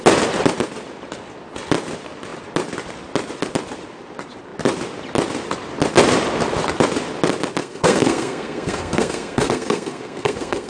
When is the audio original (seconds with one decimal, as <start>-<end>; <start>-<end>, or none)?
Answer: 0.0-7.6